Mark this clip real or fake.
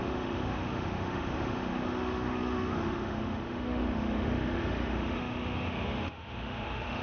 fake